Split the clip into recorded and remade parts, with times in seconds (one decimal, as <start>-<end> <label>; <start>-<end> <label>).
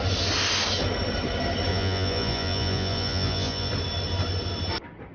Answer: 0.0-1.7 recorded; 1.7-3.7 remade; 3.7-5.1 recorded